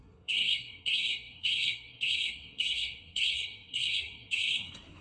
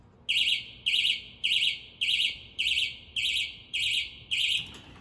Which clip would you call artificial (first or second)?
first